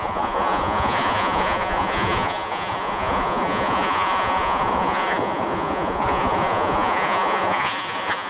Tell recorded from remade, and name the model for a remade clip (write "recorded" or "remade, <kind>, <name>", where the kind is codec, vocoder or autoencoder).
remade, vocoder, Vocos